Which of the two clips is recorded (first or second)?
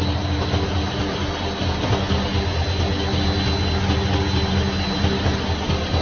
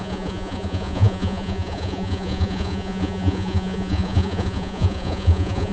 first